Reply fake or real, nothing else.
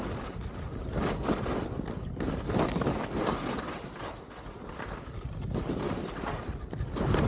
real